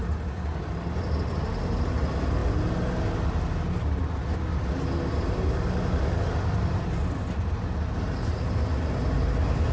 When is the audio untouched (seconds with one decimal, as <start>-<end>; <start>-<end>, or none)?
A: 0.0-9.7